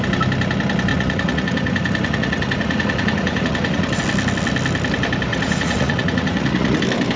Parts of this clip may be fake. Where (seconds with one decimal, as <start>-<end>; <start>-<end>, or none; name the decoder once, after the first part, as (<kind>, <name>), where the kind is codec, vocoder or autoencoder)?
0.9-4.0 (vocoder, Vocos); 5.3-6.8